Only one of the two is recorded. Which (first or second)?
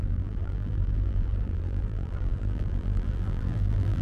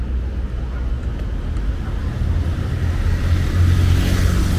second